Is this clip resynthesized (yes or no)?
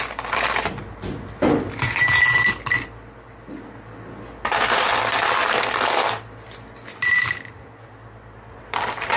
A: no